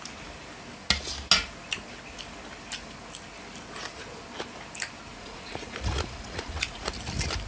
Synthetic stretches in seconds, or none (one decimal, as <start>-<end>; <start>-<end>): 5.1-6.9